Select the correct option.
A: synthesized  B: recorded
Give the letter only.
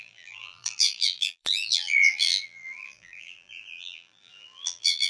A